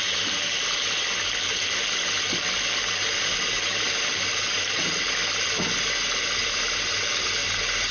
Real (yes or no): yes